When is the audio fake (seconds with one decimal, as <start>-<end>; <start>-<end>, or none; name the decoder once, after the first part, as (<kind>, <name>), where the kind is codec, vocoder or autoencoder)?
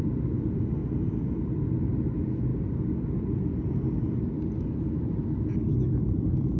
none